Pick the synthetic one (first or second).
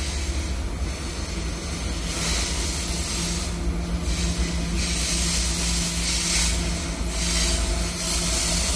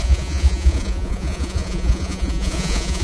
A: second